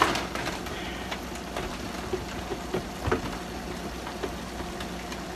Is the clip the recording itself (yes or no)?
yes